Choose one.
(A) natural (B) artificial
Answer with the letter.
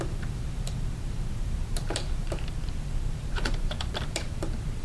B